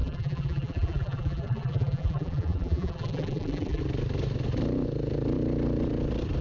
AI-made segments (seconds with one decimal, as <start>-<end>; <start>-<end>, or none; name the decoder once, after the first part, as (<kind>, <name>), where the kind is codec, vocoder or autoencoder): 0.0-3.8 (vocoder, BigVGAN v2)